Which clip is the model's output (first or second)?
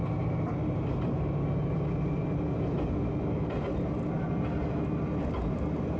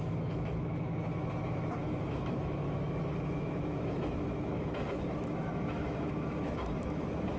second